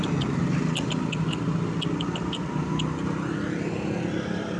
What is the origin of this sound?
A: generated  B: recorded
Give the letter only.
B